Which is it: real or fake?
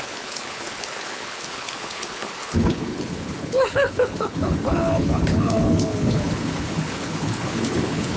fake